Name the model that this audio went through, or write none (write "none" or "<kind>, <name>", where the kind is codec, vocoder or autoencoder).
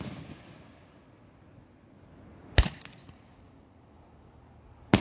none